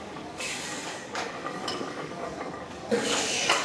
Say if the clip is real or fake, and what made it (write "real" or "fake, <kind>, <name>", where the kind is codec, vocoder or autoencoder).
fake, codec, DAC